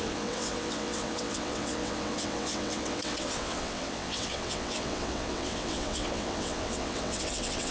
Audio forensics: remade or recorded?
remade